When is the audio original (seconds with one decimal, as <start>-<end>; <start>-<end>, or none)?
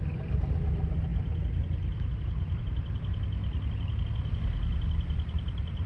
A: 0.0-5.9